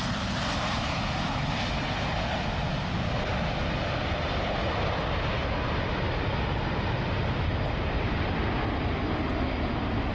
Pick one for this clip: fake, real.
real